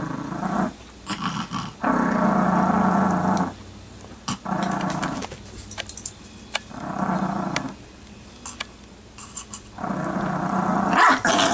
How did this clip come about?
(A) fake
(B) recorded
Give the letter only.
B